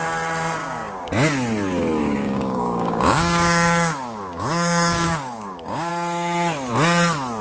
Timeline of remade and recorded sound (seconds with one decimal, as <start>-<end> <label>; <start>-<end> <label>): 0.0-0.6 recorded; 0.6-1.1 remade; 1.1-2.0 recorded; 2.0-5.9 remade; 5.9-7.4 recorded